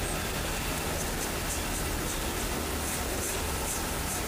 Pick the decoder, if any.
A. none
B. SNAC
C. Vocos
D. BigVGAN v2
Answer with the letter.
A